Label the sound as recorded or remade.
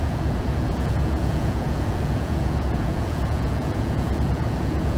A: remade